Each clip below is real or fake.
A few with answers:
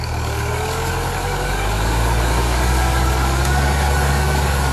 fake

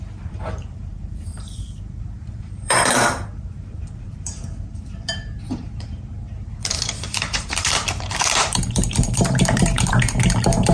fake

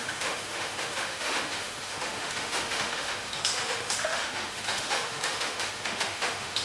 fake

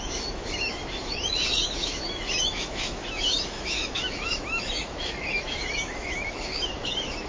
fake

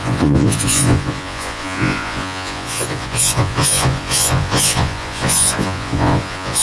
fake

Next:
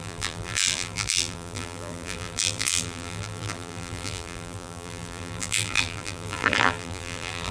fake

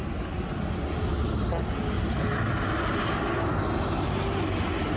real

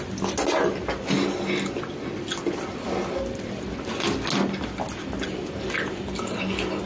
real